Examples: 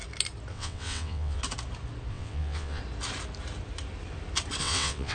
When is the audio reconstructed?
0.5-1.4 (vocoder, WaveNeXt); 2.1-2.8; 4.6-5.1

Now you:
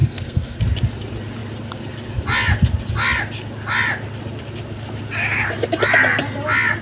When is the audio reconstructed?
0.0-0.6 (codec, SNAC)

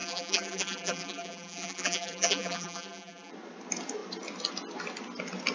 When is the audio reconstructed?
0.0-3.3 (vocoder, BigVGAN v2)

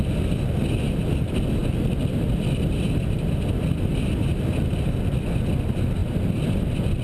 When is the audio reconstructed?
none